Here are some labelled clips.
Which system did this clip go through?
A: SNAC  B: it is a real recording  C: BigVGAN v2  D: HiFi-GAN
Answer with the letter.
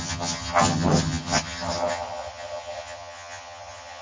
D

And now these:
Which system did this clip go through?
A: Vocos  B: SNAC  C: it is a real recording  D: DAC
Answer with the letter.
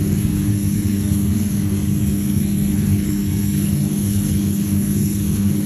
B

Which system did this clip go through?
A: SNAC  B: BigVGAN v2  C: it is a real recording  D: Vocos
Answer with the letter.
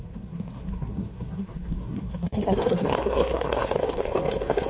A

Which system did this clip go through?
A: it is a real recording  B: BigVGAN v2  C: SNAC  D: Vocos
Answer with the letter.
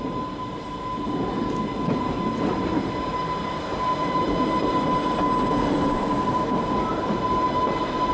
A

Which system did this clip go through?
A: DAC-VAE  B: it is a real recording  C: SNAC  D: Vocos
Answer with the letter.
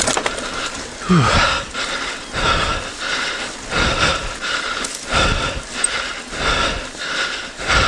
B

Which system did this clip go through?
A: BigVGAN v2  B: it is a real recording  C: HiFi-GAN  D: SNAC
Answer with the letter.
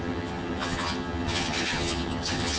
C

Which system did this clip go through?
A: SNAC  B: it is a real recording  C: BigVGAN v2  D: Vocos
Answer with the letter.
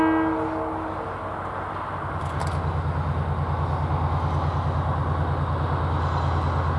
B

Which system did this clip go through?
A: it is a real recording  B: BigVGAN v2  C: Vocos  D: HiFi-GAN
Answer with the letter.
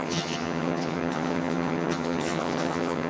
D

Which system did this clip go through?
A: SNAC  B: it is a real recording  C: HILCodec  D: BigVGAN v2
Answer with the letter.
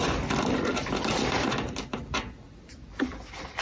B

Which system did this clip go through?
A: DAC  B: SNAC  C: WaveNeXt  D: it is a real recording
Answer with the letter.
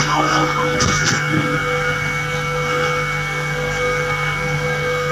B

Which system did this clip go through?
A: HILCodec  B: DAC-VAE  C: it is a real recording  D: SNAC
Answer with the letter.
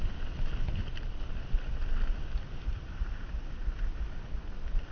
C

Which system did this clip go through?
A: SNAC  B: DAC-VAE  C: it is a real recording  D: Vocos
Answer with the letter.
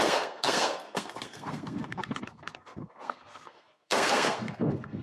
A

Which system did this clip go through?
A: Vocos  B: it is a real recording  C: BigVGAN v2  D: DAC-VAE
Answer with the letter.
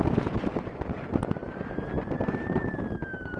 C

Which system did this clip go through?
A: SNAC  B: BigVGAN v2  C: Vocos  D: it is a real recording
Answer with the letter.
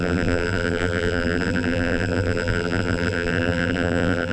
B